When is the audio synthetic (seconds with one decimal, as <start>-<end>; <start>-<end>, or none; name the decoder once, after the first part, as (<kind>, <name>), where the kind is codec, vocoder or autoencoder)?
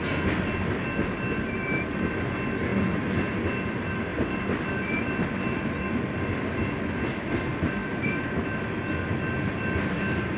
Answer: none